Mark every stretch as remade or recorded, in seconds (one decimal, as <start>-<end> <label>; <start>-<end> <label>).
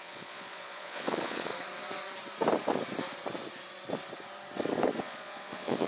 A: 0.0-1.5 remade; 1.5-5.0 recorded; 5.0-5.9 remade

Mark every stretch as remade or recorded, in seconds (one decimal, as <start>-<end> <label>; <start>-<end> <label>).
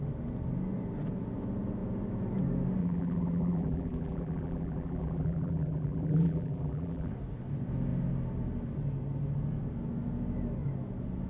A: 0.0-2.8 recorded; 2.8-7.1 remade; 7.1-11.3 recorded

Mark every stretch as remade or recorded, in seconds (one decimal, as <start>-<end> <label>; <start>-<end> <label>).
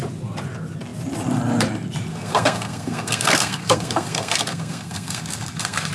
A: 0.0-2.1 recorded; 2.1-5.9 remade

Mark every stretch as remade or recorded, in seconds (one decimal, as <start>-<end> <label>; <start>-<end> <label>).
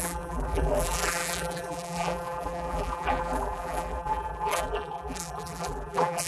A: 0.0-6.3 remade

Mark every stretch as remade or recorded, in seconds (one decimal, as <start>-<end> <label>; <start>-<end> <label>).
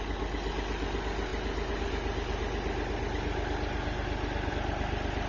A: 0.0-5.3 recorded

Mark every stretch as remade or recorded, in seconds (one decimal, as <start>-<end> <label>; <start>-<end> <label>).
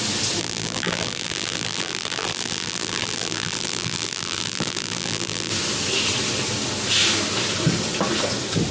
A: 0.0-0.4 recorded; 0.4-5.5 remade; 5.5-8.7 recorded